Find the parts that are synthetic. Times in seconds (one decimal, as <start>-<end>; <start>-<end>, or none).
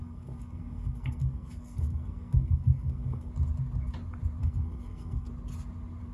0.0-3.3; 4.4-5.3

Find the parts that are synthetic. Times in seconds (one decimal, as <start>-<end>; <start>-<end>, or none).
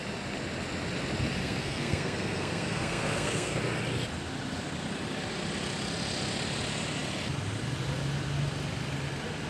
1.4-3.6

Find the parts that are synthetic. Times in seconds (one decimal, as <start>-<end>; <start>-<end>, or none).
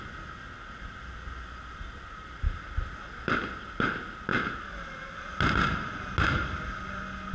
none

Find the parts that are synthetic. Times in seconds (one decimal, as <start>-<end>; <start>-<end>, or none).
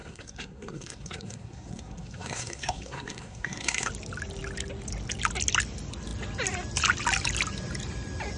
0.0-3.9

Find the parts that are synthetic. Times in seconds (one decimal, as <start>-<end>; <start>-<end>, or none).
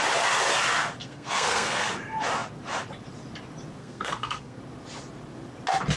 1.0-1.9; 3.8-4.6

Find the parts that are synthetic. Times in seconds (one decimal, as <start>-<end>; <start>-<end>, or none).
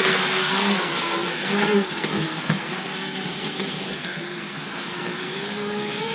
0.0-6.1